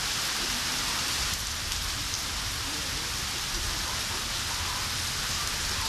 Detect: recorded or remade remade